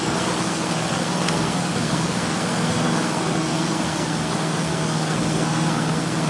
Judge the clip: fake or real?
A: fake